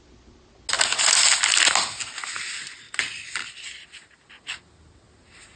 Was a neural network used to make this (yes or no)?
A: no